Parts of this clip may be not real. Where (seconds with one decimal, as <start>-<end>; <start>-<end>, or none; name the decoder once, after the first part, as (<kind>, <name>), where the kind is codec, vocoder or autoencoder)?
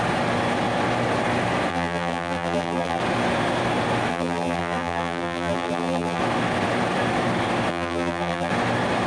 1.7-3.0 (vocoder, BigVGAN v2); 4.1-6.2; 7.7-8.5